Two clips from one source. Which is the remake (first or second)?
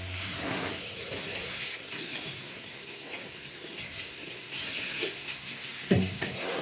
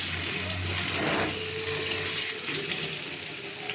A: first